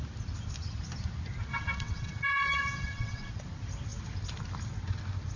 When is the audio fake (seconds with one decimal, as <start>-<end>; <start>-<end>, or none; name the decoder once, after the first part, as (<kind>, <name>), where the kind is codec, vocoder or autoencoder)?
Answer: 1.5-3.3 (vocoder, WaveNeXt)